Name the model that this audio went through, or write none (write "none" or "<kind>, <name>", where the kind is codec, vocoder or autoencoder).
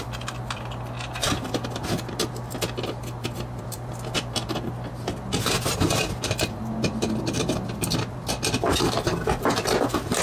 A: none